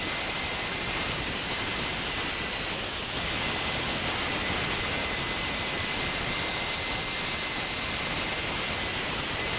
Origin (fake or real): real